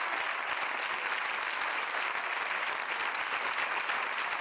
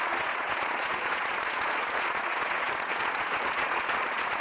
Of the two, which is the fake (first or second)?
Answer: second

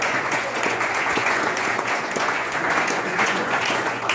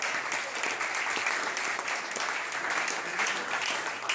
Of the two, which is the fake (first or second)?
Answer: first